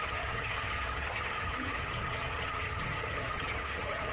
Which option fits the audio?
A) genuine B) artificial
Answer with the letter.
B